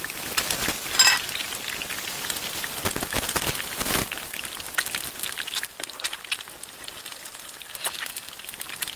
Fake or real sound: real